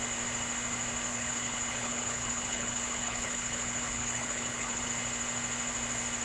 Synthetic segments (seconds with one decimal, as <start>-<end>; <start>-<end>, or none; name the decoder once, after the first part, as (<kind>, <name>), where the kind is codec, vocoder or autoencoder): 1.1-4.8 (codec, HILCodec)